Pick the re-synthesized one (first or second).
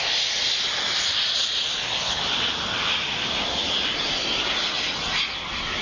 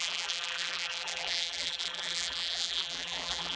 second